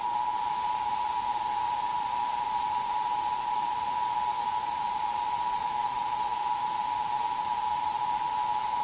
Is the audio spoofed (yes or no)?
yes